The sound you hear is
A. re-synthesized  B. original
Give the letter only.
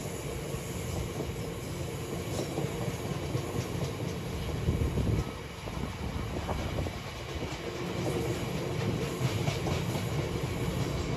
B